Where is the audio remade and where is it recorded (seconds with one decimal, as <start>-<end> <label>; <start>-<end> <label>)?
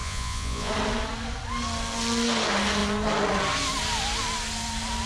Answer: 0.0-0.7 remade; 0.7-5.1 recorded